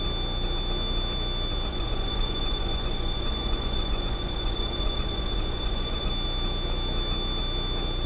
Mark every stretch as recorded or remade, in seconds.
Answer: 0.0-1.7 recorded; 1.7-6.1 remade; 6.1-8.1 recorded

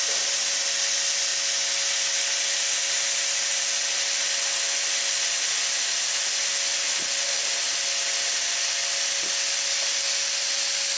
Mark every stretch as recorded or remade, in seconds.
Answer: 0.0-11.0 recorded

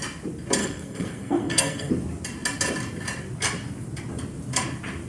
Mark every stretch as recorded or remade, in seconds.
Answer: 0.0-0.6 recorded; 0.6-1.9 remade; 1.9-5.1 recorded